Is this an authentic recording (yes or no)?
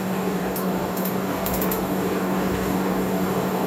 no